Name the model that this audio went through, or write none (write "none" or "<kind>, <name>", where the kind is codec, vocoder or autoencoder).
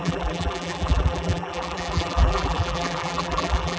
vocoder, BigVGAN v2